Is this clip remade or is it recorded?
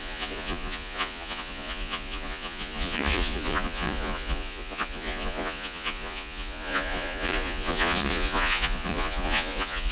remade